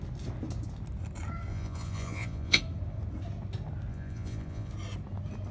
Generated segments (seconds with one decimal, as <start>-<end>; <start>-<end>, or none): 1.5-2.6; 3.9-4.7

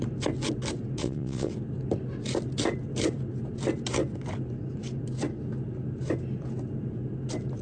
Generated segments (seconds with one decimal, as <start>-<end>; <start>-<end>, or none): 1.0-1.5

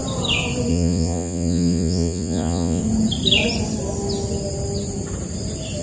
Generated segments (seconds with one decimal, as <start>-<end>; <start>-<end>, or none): 0.7-2.8

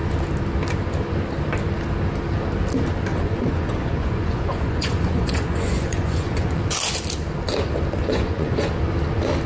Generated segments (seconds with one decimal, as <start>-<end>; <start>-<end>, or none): 3.1-6.6; 8.0-8.7

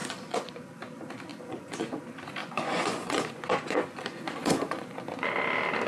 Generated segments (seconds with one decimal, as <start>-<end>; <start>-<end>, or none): 0.0-0.6; 1.3-2.0; 2.4-5.3